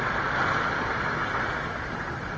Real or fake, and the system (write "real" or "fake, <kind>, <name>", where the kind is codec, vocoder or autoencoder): real